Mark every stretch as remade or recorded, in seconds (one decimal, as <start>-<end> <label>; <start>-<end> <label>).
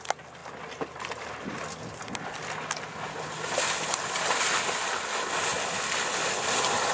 0.0-6.9 recorded